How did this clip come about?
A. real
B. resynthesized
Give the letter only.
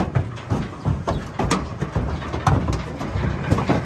A